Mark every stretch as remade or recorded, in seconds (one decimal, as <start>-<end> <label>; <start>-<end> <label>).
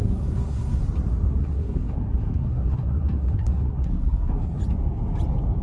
0.0-0.8 remade; 0.8-1.4 recorded; 1.4-4.6 remade; 4.6-5.6 recorded